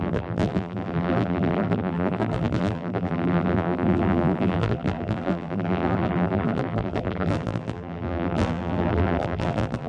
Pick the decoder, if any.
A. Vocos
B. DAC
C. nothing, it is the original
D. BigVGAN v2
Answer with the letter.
D